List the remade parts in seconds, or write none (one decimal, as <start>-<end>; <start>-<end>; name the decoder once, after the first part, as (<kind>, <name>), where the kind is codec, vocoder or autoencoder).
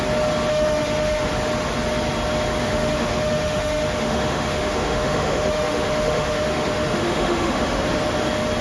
0.5-1.3 (autoencoder, DAC-VAE); 2.6-7.8